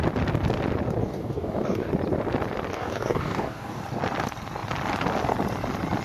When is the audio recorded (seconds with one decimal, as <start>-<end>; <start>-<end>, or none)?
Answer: 0.0-1.0; 1.9-2.7; 3.8-6.0